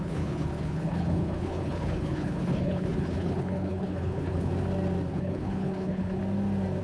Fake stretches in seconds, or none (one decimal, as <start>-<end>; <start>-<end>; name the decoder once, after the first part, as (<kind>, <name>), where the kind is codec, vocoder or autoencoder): 0.0-4.5 (codec, HILCodec); 5.1-6.2